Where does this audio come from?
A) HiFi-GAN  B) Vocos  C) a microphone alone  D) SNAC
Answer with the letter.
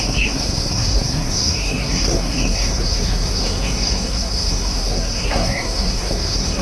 D